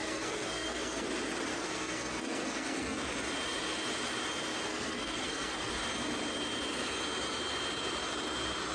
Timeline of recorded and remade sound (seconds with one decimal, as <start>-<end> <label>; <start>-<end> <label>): 0.0-1.1 remade; 1.1-1.5 recorded; 1.5-3.0 remade; 3.0-4.7 recorded; 4.7-5.7 remade; 5.7-8.7 recorded